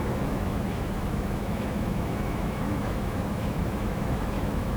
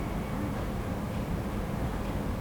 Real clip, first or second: second